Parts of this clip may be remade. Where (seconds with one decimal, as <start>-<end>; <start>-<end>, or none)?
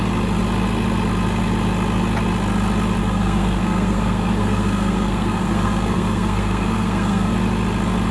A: 3.0-7.3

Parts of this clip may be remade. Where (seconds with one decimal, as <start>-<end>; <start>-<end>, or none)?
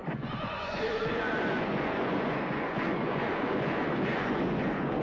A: 0.0-5.0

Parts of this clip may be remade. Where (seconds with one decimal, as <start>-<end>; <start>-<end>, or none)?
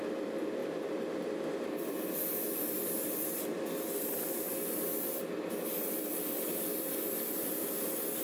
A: 0.6-2.3; 6.7-7.7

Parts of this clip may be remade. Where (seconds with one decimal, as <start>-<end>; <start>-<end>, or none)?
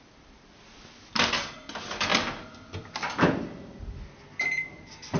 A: none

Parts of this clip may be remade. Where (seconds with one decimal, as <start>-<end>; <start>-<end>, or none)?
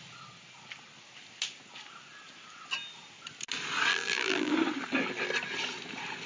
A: 3.9-4.5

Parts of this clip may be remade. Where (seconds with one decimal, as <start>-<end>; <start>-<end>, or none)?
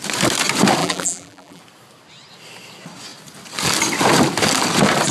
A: 0.8-1.6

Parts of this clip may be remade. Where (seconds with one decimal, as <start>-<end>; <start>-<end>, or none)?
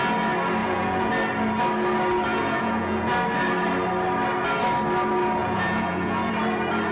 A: 0.6-1.1; 2.3-3.1; 5.4-6.3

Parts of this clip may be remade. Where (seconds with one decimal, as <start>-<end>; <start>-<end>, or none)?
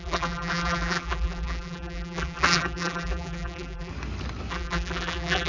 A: 0.0-3.9; 4.5-5.5